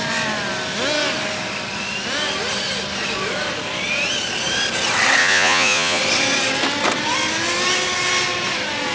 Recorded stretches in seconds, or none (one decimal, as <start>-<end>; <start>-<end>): 0.0-5.2; 6.0-8.9